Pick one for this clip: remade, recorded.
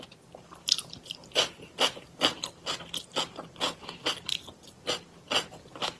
recorded